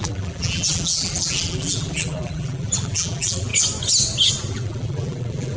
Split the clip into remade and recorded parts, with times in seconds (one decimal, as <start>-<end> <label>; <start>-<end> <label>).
0.0-3.5 remade; 3.5-4.5 recorded; 4.5-5.6 remade

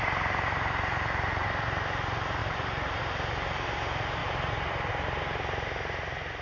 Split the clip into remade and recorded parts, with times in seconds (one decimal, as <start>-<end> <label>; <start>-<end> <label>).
0.0-2.4 recorded; 2.4-3.0 remade; 3.0-4.2 recorded; 4.2-4.9 remade; 4.9-6.4 recorded